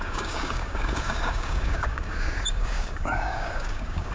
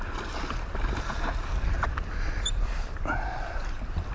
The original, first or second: second